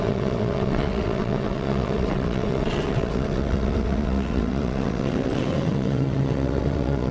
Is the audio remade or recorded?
remade